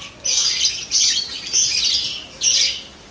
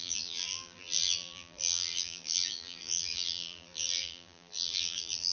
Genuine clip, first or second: first